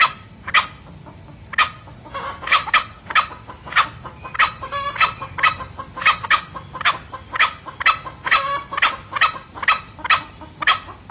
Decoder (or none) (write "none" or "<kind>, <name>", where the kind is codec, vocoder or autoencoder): none